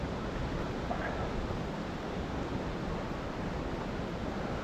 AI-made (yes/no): no